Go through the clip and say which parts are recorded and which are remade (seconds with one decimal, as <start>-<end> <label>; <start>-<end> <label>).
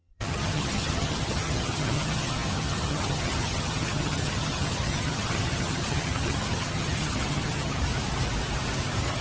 0.0-7.8 remade; 7.8-9.2 recorded